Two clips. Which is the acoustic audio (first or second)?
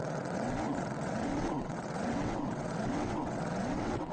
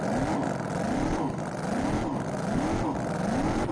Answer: second